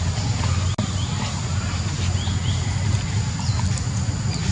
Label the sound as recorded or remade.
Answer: recorded